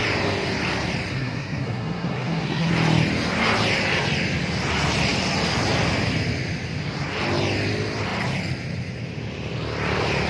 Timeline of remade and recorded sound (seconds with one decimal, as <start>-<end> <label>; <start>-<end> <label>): 0.0-1.1 recorded; 1.1-2.7 remade; 2.7-10.3 recorded